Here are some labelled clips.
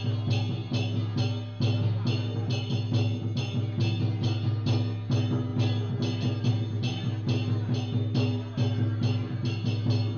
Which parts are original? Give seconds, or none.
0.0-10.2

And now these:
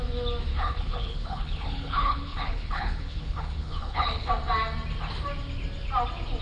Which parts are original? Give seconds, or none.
0.0-0.5; 4.3-6.4

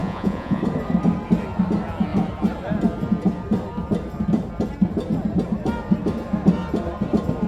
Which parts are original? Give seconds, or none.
0.6-7.5

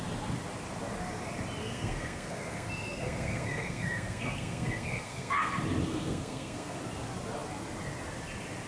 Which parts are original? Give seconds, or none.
0.0-1.6; 5.5-5.9; 6.8-8.7

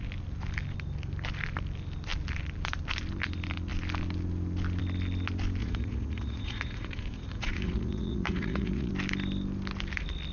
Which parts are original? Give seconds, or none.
0.0-5.6; 8.9-10.3